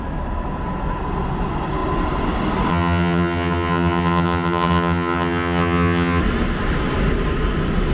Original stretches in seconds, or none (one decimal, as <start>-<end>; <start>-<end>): 0.0-2.7; 6.2-7.9